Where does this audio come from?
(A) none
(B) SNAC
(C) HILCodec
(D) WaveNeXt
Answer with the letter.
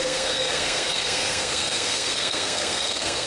B